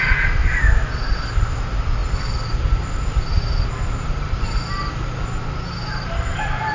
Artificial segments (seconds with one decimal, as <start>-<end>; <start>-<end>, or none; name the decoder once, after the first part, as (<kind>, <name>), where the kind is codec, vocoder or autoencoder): none